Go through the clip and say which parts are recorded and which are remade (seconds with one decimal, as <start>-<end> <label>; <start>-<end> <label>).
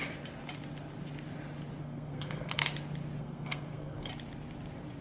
0.0-1.8 recorded; 1.8-2.6 remade; 2.6-3.2 recorded; 3.2-4.1 remade; 4.1-5.0 recorded